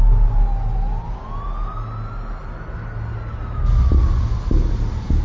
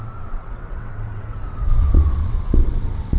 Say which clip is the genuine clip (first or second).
first